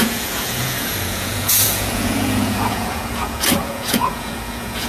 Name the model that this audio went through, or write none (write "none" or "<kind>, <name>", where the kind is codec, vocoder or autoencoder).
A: vocoder, Vocos